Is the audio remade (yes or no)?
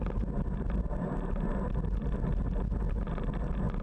no